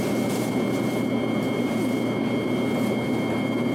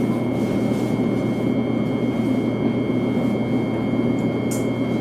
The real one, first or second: second